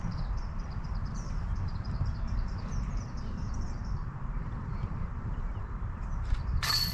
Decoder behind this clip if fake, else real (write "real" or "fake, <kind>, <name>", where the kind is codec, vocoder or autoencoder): fake, vocoder, BigVGAN v2